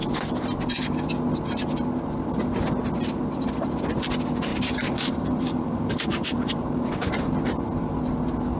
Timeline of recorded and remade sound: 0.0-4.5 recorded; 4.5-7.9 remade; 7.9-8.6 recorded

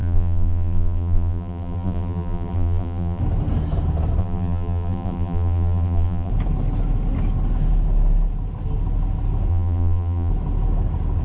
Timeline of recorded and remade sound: 0.0-3.2 remade; 3.2-4.2 recorded; 4.2-6.3 remade; 6.3-9.5 recorded; 9.5-10.3 remade; 10.3-11.2 recorded

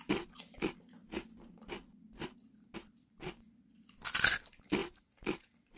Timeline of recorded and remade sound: 0.0-4.8 recorded; 4.8-5.8 remade

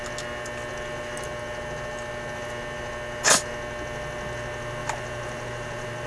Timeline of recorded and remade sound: 0.0-4.8 recorded; 4.8-6.1 remade

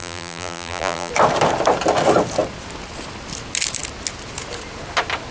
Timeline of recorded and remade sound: 0.0-1.1 remade; 1.1-5.3 recorded

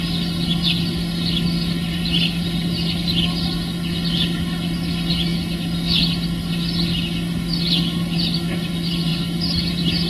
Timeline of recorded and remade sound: 0.0-5.3 remade; 5.3-7.7 recorded; 7.7-10.1 remade